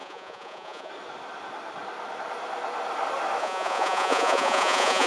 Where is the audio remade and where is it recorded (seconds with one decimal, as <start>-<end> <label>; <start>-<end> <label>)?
0.0-0.9 remade; 0.9-3.4 recorded; 3.4-5.1 remade